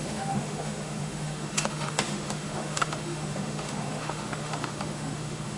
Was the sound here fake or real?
fake